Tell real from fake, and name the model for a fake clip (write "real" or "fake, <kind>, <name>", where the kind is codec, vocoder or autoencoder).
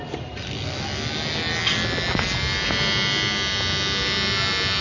real